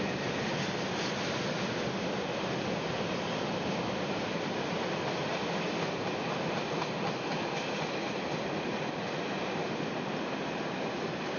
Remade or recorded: recorded